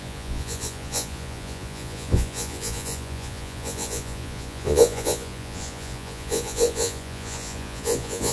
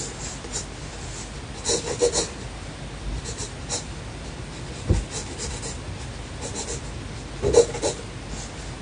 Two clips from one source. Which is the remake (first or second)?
first